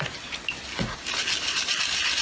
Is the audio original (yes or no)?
yes